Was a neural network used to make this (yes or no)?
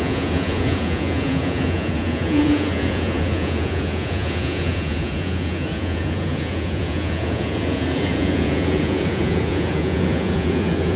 yes